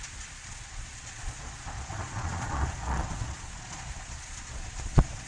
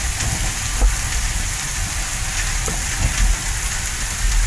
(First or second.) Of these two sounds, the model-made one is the first